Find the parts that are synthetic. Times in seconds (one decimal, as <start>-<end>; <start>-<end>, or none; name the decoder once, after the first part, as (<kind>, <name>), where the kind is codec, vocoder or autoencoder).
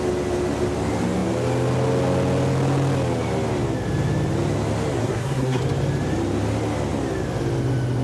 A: 5.0-5.6 (codec, SNAC)